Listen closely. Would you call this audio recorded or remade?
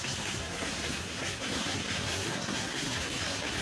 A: remade